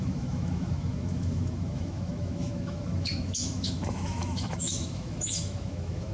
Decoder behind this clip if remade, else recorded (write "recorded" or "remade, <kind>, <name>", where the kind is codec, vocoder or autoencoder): remade, autoencoder, DAC-VAE